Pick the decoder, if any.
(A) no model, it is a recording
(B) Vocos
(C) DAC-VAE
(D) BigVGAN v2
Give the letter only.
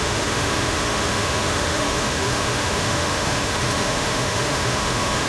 C